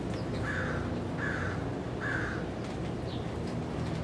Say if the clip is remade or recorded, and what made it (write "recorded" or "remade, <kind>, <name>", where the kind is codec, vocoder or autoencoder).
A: recorded